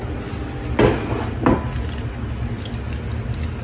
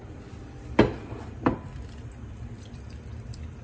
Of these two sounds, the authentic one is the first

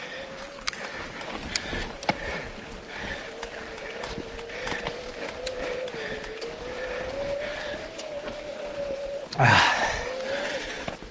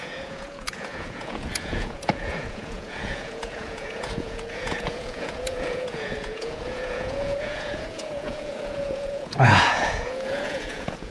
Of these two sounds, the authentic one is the first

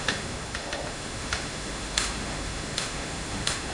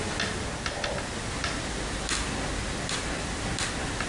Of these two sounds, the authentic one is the second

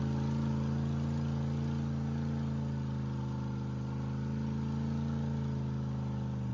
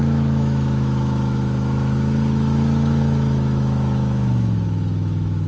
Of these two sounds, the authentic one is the first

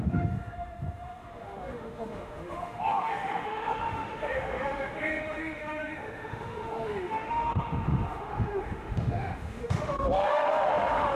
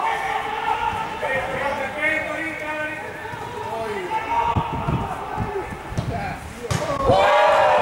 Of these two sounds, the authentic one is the second